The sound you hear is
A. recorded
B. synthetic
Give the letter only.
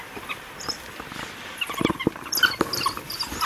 B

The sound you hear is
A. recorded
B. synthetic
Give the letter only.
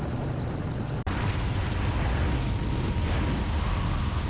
A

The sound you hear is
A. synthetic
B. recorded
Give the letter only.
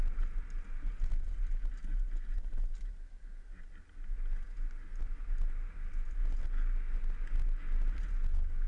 B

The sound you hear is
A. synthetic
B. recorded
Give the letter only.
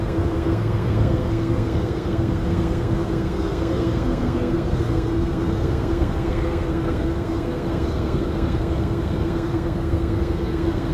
A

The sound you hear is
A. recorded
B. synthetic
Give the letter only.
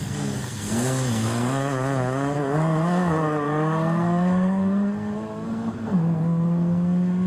B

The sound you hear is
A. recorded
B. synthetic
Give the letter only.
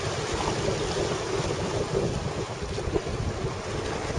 A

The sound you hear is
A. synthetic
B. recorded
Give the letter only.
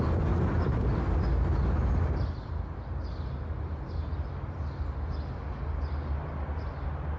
B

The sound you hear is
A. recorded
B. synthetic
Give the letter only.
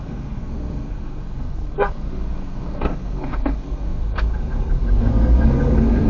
B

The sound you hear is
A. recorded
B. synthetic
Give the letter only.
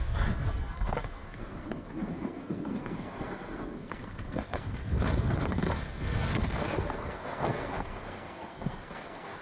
B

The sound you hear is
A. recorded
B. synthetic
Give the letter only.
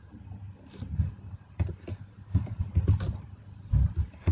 A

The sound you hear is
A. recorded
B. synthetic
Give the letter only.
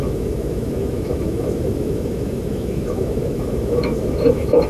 B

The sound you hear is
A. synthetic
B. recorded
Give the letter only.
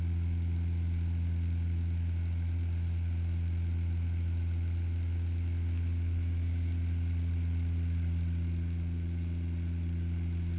B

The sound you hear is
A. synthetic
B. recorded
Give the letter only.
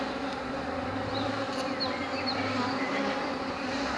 B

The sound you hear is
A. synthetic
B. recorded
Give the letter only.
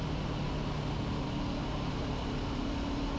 B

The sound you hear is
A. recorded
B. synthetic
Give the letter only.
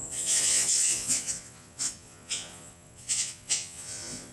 B